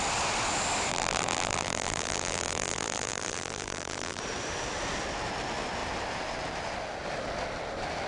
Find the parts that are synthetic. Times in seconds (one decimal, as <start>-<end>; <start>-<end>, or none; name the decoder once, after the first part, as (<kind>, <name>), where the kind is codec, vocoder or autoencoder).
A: 0.9-4.2 (vocoder, BigVGAN v2)